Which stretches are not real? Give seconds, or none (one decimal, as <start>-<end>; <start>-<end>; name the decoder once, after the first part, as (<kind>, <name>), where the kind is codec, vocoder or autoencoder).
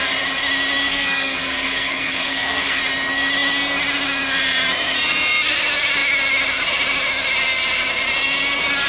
0.9-2.8 (codec, SNAC)